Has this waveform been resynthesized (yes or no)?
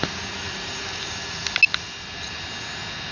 no